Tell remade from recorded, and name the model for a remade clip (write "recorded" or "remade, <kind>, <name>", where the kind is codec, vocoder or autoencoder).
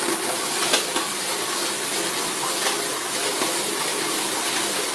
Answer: recorded